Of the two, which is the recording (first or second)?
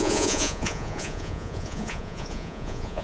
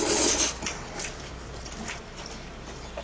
second